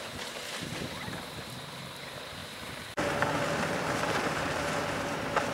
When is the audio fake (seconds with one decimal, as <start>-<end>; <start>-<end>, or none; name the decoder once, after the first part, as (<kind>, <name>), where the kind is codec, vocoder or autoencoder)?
0.0-5.5 (vocoder, BigVGAN v2)